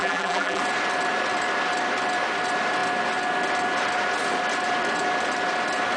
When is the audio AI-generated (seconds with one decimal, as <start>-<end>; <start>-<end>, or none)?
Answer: 0.0-0.6